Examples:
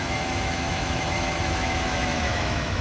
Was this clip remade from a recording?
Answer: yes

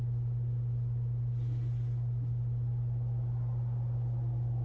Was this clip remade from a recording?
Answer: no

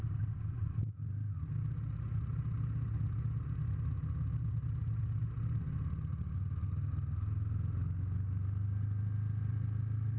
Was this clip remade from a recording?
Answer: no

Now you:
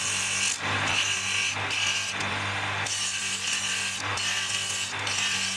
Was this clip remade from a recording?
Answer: no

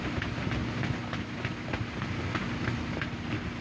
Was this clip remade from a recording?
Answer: no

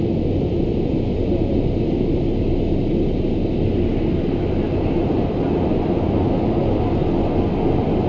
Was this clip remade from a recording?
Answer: no